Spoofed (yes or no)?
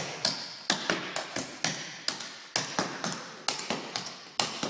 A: no